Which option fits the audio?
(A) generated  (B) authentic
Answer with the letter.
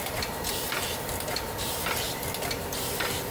B